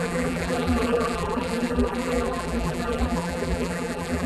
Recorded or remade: remade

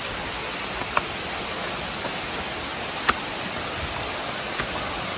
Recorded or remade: recorded